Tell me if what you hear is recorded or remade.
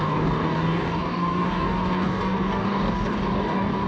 remade